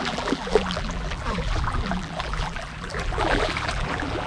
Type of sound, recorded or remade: remade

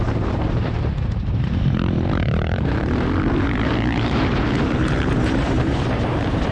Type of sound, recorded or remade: remade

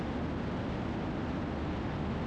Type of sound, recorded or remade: recorded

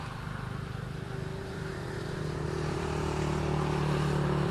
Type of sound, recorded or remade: remade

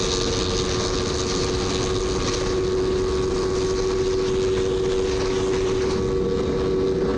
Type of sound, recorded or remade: recorded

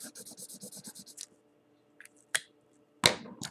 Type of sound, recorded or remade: recorded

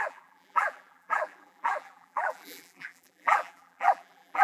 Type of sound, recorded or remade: remade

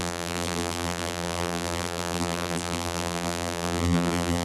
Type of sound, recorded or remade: remade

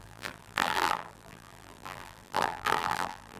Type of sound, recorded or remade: remade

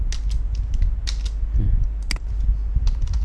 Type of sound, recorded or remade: recorded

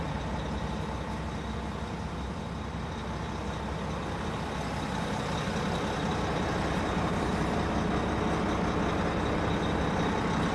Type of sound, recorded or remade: recorded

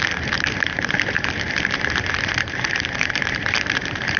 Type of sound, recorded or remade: remade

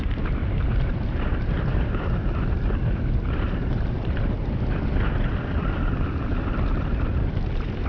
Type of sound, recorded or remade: remade